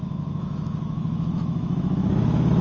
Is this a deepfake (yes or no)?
yes